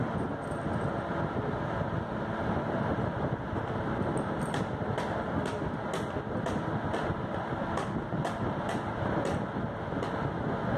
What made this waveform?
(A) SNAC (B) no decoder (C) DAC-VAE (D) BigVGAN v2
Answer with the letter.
B